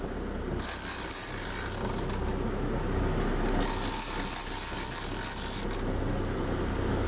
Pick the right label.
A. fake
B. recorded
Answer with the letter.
B